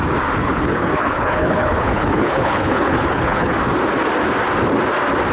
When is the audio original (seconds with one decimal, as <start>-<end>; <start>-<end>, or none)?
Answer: 0.0-0.4; 3.6-5.3